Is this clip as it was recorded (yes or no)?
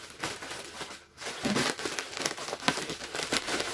yes